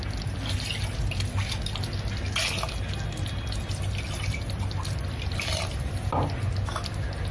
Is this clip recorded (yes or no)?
yes